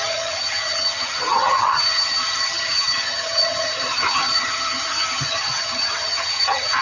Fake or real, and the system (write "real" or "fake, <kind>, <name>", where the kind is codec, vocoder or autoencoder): fake, vocoder, HiFi-GAN